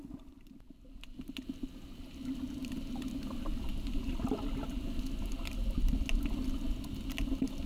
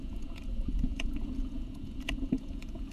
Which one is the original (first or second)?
first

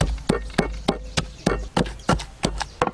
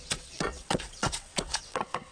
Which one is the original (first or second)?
first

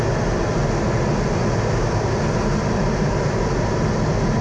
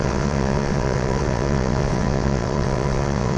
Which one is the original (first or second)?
first